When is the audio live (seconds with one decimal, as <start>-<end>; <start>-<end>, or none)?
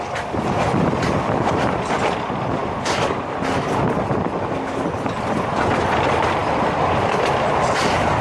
0.0-8.2